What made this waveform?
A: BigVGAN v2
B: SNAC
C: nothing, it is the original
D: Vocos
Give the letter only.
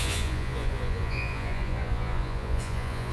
D